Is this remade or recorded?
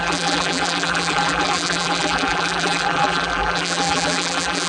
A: remade